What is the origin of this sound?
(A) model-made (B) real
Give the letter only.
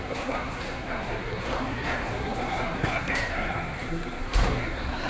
A